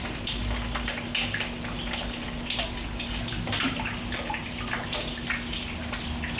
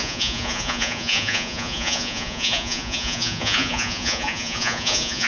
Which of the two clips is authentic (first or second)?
first